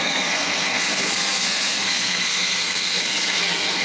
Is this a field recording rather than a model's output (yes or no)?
no